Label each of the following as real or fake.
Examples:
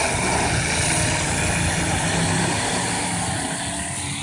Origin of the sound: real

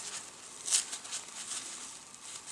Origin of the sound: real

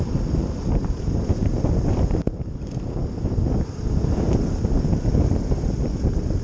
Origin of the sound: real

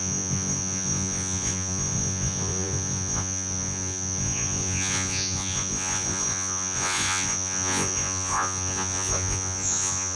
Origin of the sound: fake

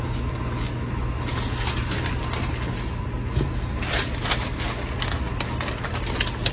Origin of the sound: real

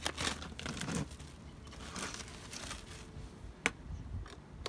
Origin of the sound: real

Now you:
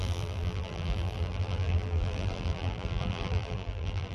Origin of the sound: fake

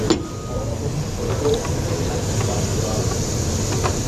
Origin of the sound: real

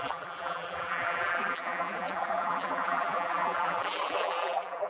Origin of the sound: fake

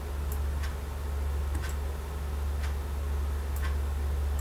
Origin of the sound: real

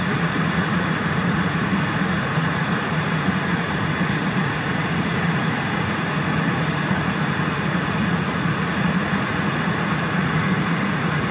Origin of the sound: fake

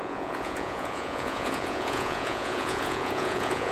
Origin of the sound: fake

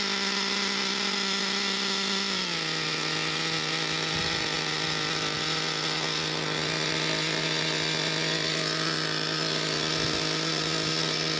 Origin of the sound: real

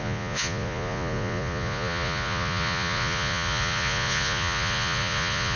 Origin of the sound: fake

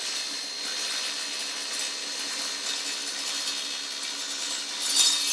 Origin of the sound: real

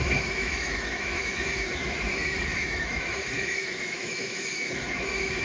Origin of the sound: fake